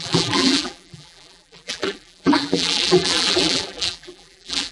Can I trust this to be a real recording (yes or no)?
no